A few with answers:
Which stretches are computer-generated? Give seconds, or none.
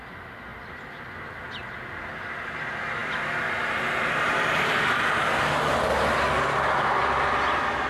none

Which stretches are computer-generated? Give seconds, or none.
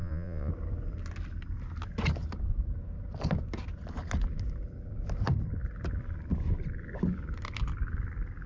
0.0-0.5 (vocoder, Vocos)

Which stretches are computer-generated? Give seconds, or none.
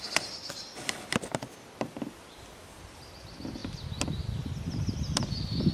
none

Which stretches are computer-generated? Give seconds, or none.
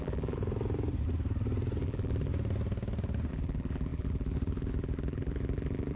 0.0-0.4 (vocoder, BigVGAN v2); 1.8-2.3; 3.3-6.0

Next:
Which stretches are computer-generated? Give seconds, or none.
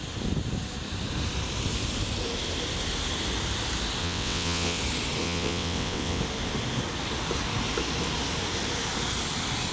4.0-4.8 (vocoder, WaveNeXt); 5.2-6.2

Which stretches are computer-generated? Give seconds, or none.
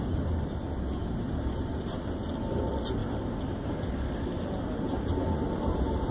1.0-1.7 (vocoder, BigVGAN v2)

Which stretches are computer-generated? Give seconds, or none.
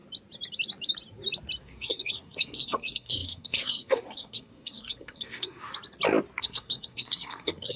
1.6-5.7 (codec, SNAC); 6.4-7.8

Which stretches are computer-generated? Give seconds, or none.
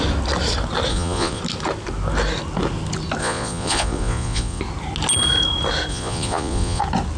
0.9-1.4 (vocoder, Vocos); 3.2-4.6; 5.9-6.8